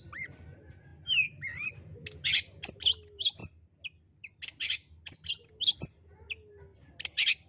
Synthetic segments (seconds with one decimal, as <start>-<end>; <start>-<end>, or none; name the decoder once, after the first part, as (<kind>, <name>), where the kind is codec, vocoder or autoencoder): none